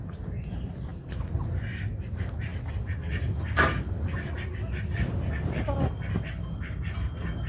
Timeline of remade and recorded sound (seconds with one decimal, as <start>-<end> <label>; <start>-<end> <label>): 0.0-2.5 remade; 2.5-7.0 recorded; 7.0-7.5 remade